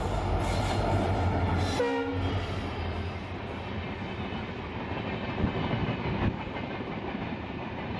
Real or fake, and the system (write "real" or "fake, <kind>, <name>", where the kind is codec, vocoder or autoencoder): real